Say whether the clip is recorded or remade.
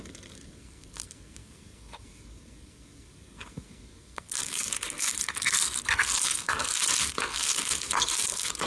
remade